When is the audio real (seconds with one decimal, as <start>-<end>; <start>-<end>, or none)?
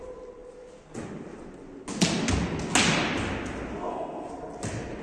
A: 0.0-3.8; 4.3-5.0